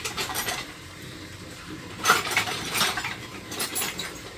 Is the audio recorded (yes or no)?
no